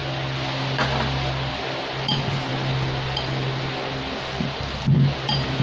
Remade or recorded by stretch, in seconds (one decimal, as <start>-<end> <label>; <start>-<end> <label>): 0.0-5.6 recorded